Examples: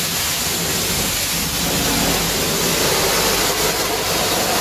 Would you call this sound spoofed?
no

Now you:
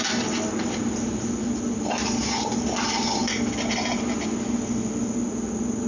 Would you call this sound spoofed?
no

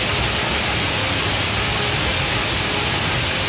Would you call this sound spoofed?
no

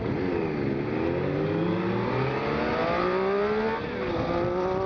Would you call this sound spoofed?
no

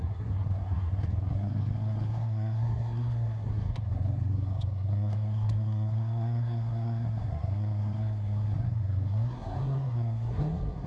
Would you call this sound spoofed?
yes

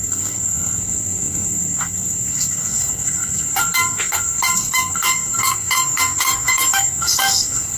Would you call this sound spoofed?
yes